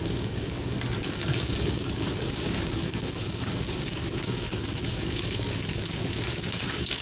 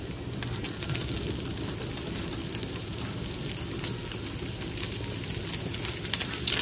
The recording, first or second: second